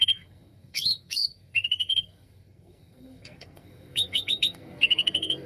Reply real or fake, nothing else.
fake